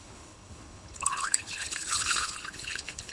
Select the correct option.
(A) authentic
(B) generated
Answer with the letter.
B